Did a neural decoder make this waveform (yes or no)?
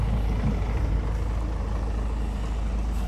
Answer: no